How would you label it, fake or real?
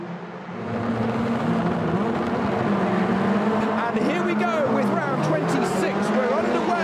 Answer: real